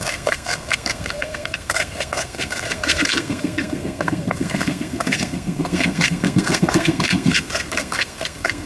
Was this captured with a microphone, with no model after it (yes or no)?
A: no